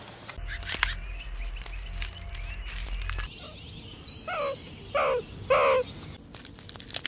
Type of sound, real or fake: real